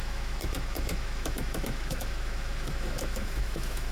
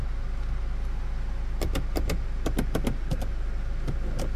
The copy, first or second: first